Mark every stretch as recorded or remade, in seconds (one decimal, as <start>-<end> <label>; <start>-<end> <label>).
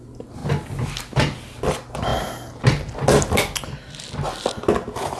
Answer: 0.0-5.2 recorded